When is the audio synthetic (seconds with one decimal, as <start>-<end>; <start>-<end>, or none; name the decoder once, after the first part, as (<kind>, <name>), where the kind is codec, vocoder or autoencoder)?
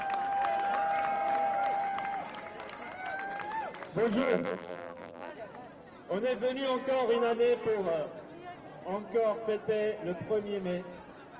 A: 4.2-5.3 (vocoder, BigVGAN v2)